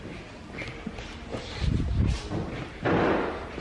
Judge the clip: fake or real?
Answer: real